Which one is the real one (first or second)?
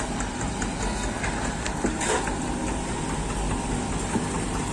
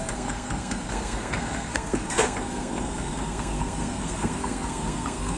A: first